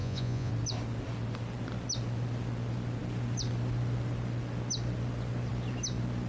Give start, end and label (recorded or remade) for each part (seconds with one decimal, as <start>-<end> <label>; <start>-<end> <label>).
0.0-0.5 remade; 0.5-6.3 recorded